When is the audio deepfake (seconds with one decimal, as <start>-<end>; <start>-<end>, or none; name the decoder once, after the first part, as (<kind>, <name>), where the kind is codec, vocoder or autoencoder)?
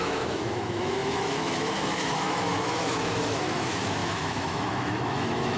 0.0-5.6 (autoencoder, DAC-VAE)